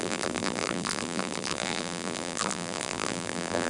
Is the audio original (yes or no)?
no